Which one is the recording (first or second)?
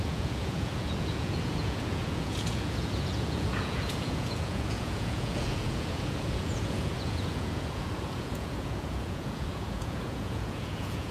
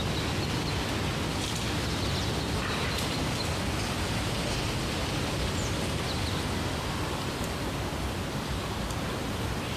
second